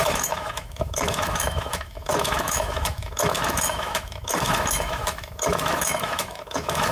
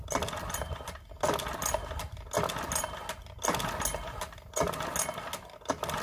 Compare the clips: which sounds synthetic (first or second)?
first